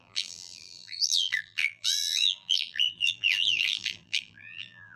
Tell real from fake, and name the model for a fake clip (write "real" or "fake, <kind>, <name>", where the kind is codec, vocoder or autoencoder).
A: fake, vocoder, BigVGAN v2